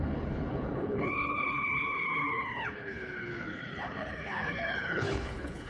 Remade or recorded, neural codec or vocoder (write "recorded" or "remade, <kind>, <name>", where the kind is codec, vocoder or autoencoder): remade, codec, HILCodec